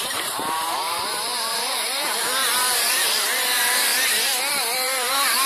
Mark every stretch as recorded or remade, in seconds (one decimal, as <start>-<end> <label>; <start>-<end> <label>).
0.0-3.9 remade; 3.9-4.5 recorded; 4.5-5.5 remade